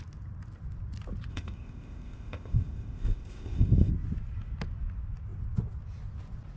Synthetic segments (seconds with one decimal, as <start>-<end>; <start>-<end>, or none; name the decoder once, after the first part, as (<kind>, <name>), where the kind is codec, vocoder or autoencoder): 1.3-3.9 (codec, ZipCodec)